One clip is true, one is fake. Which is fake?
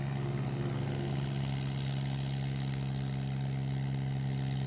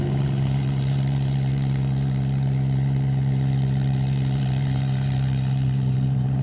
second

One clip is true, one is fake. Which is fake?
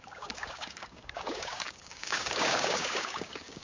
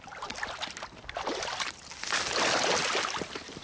first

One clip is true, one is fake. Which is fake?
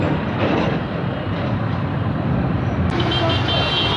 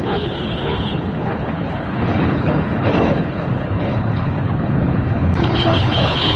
second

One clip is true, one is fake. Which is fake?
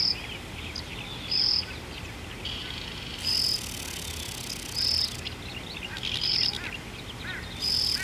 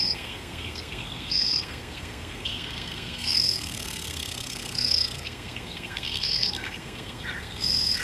second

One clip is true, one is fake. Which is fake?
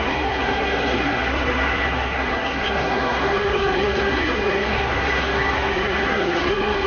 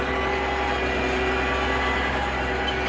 first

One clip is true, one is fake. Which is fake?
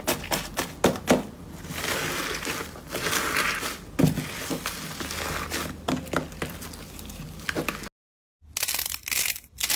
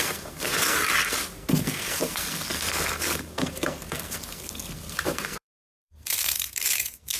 second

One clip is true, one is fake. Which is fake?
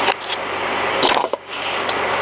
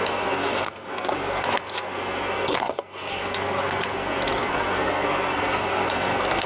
second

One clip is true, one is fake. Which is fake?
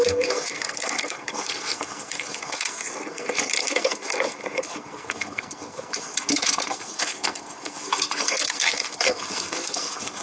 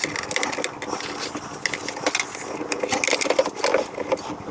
first